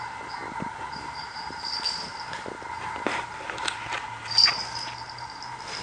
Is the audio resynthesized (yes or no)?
no